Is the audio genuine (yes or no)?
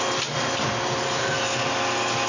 yes